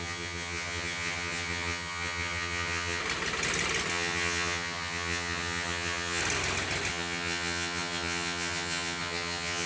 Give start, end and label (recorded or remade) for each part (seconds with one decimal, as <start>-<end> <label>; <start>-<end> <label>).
0.0-3.0 remade; 3.0-3.9 recorded; 3.9-6.2 remade; 6.2-6.9 recorded; 6.9-9.7 remade